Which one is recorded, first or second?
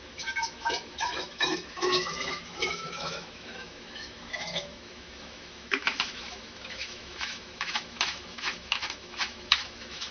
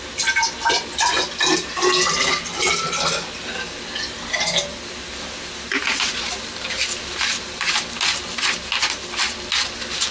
second